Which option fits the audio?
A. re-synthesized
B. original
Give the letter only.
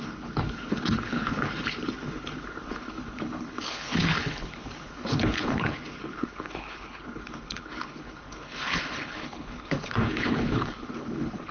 A